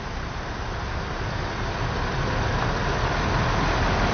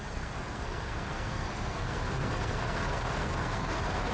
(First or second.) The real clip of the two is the first